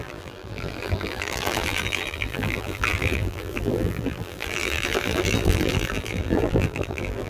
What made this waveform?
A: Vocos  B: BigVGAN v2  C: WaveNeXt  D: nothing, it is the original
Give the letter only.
B